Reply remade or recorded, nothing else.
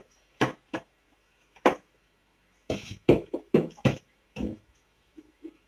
remade